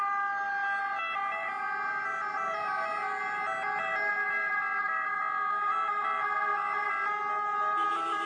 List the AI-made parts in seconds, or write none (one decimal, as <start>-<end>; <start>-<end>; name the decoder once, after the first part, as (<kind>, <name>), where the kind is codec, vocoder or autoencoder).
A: none